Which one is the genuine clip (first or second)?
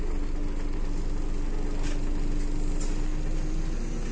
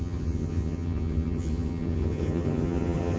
first